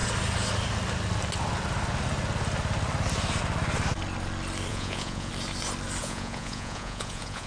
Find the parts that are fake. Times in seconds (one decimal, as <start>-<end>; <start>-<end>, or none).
4.7-5.3; 6.0-7.5